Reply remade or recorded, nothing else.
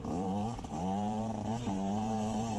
remade